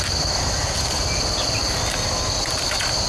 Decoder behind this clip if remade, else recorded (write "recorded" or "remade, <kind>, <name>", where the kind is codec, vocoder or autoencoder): recorded